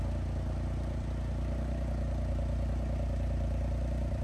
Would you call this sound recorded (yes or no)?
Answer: no